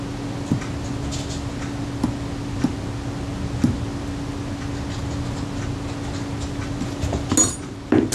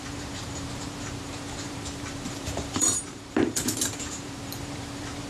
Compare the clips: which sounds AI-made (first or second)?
second